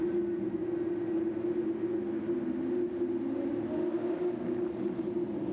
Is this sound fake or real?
real